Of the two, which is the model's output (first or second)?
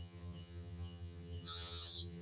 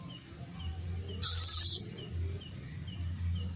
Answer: first